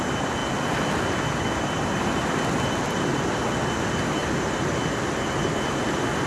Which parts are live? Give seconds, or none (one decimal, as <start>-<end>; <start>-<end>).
0.0-6.3